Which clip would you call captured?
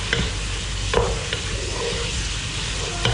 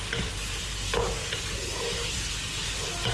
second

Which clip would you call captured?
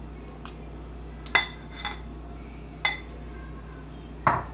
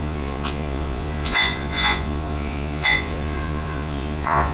first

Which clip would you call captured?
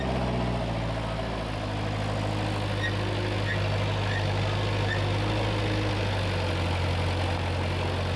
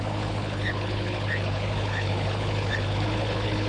first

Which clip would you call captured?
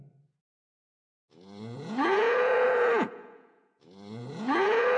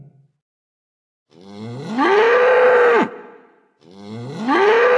second